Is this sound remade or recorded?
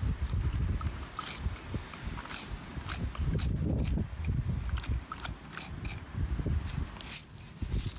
recorded